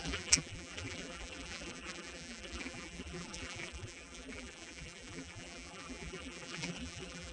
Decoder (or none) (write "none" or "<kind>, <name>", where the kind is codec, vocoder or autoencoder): vocoder, BigVGAN v2